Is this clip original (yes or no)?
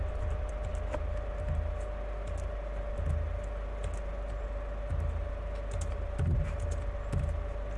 yes